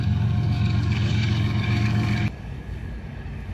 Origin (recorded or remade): remade